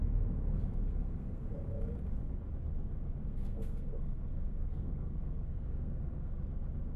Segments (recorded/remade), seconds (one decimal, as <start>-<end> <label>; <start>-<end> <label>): 0.0-1.5 remade; 1.5-3.2 recorded; 3.2-6.4 remade; 6.4-7.0 recorded